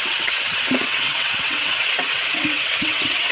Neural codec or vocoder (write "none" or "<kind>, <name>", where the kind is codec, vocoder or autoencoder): vocoder, WaveNeXt